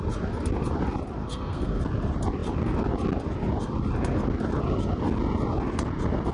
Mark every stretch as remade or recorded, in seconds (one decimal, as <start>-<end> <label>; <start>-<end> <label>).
0.0-1.2 recorded; 1.2-1.8 remade; 1.8-6.3 recorded